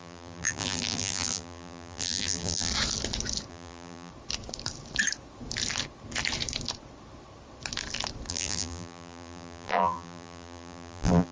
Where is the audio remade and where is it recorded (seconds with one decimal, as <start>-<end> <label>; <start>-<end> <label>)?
0.0-2.7 remade; 2.7-3.5 recorded; 3.5-4.1 remade; 4.1-8.3 recorded; 8.3-11.3 remade